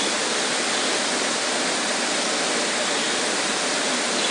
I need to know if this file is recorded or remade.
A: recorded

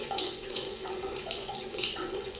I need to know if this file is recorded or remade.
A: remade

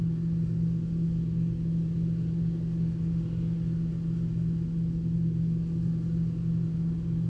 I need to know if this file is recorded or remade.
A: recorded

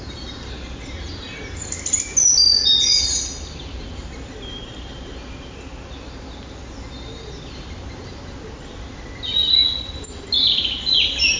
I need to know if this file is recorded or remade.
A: recorded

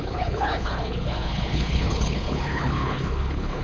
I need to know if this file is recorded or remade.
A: remade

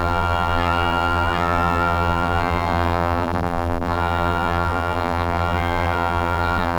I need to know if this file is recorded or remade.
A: remade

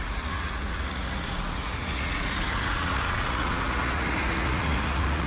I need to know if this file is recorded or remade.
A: remade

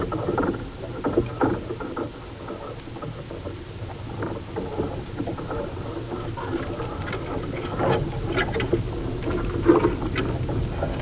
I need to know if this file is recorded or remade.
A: recorded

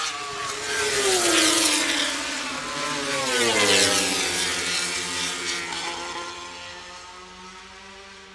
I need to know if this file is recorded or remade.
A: recorded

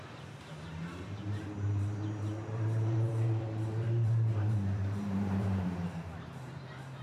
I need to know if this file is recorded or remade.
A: remade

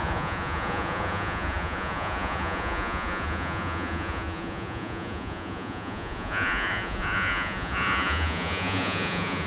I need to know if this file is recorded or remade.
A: remade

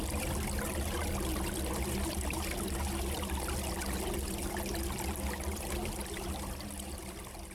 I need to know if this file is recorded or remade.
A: recorded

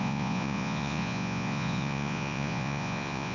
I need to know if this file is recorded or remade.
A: remade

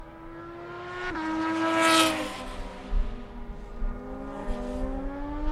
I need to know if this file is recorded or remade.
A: recorded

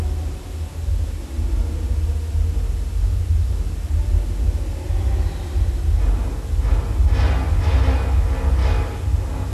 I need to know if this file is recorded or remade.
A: recorded